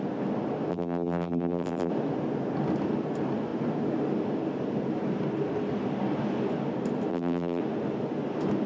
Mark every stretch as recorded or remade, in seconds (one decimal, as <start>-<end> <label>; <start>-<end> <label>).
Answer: 0.0-0.7 recorded; 0.7-1.9 remade; 1.9-7.1 recorded; 7.1-7.6 remade; 7.6-8.7 recorded